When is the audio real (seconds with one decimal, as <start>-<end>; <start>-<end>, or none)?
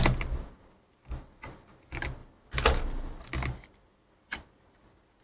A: 0.0-5.2